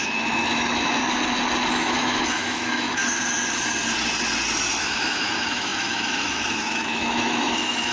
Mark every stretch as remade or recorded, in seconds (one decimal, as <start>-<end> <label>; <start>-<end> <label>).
0.0-1.0 remade; 1.0-1.7 recorded; 1.7-3.0 remade; 3.0-4.8 recorded; 4.8-7.9 remade